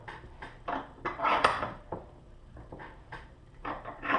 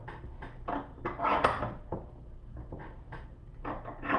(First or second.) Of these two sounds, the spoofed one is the first